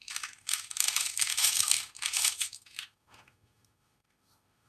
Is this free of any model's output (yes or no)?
no